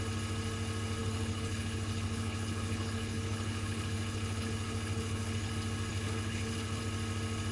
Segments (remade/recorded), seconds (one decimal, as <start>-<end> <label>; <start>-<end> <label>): 0.0-1.0 recorded; 1.0-5.5 remade; 5.5-5.9 recorded; 5.9-6.8 remade; 6.8-7.5 recorded